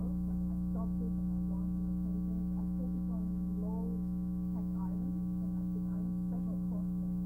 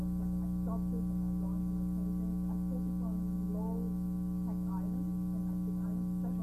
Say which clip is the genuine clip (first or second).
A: second